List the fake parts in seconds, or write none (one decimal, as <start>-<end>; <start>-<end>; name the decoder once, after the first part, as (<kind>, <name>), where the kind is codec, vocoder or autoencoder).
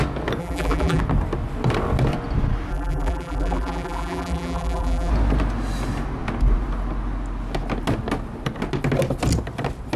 0.4-1.0 (vocoder, BigVGAN v2); 2.7-5.1